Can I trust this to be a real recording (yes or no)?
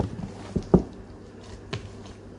yes